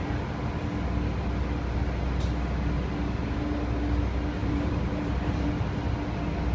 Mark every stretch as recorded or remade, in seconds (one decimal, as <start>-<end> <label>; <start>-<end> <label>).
0.0-4.4 recorded; 4.4-5.5 remade; 5.5-6.5 recorded